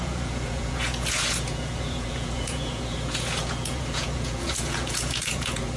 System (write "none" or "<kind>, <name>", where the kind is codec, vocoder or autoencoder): vocoder, Vocos